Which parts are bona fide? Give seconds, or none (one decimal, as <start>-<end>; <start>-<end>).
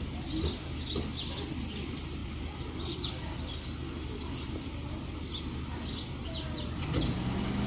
0.0-7.7